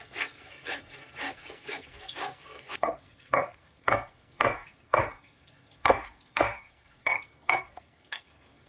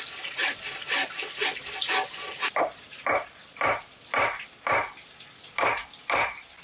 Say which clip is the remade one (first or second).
first